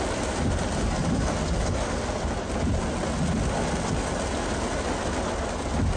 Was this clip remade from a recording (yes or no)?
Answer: no